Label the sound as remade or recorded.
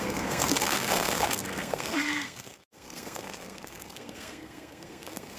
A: remade